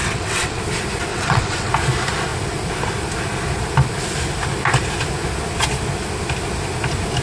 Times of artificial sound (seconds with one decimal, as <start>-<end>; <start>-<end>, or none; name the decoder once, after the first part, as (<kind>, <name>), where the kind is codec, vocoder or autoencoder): 0.0-0.6 (vocoder, WaveNeXt); 1.1-1.7